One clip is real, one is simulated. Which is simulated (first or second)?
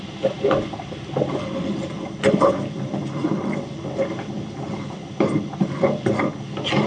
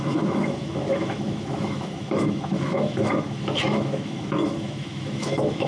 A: second